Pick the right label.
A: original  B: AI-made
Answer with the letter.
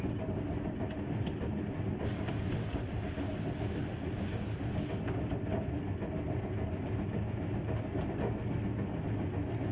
A